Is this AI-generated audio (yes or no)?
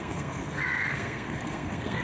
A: yes